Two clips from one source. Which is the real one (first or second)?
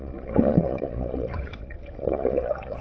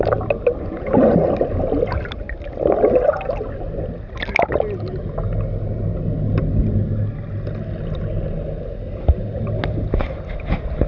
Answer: second